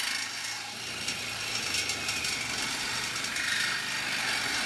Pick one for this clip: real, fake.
real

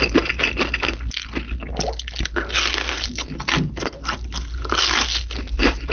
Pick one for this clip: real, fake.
real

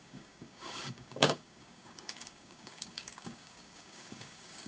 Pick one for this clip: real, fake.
fake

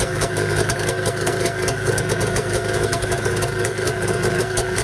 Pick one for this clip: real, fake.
fake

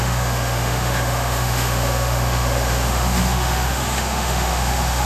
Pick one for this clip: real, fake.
fake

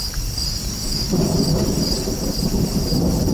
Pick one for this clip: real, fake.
real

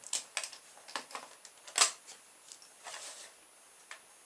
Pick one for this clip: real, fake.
real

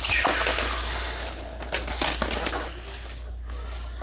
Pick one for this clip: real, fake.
real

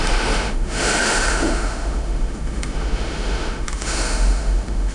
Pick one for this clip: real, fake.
fake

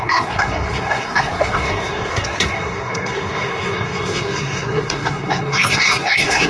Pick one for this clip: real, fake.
fake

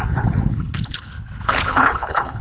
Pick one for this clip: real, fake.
fake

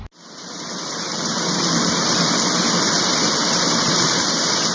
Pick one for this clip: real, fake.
real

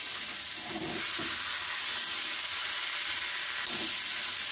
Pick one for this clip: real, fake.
real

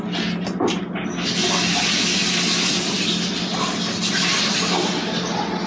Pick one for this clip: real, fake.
real